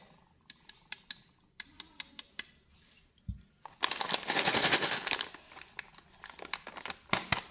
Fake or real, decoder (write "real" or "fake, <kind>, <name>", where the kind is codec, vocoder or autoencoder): real